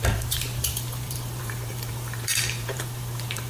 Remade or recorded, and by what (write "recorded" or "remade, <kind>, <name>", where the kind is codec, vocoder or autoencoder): remade, vocoder, BigVGAN v2